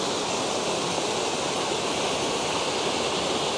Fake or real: real